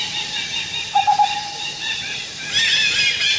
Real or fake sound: real